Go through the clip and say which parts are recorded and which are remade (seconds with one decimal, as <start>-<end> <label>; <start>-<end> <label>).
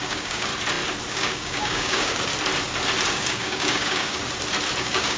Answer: 0.0-0.5 remade; 0.5-1.1 recorded; 1.1-2.3 remade; 2.3-3.1 recorded; 3.1-4.2 remade; 4.2-4.8 recorded; 4.8-5.2 remade